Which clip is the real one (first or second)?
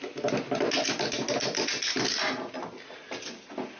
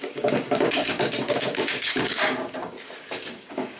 first